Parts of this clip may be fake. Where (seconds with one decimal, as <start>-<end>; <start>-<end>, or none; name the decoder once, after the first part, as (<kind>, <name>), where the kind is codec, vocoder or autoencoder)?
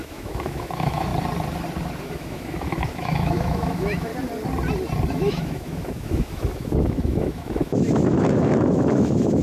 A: 0.0-1.1 (autoencoder, DAC-VAE); 2.0-4.1; 5.1-9.4